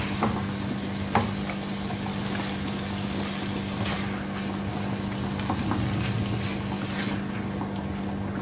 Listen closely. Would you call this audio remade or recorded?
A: remade